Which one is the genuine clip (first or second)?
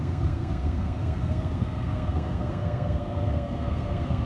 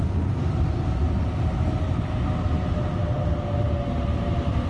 second